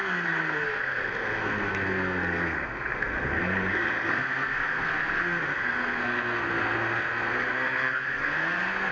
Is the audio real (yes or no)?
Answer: no